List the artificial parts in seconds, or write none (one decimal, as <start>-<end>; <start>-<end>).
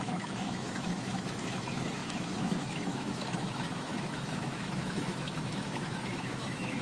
0.0-6.8